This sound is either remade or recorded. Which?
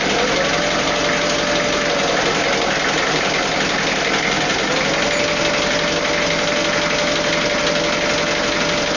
recorded